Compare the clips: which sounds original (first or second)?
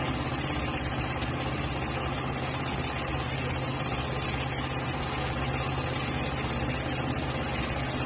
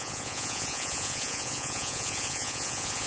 first